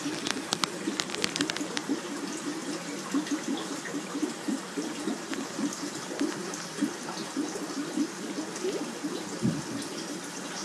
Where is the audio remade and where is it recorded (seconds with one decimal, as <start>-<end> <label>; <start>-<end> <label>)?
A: 0.0-10.6 recorded